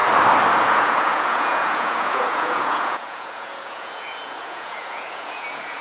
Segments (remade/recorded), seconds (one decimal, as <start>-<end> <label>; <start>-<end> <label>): 0.0-0.6 recorded; 0.6-5.8 remade